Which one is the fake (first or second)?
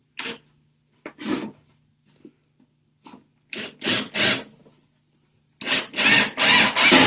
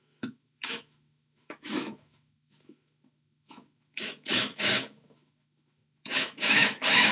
second